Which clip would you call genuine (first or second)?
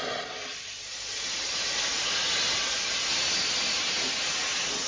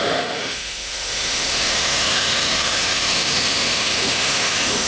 first